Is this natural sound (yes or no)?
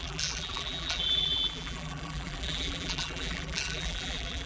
no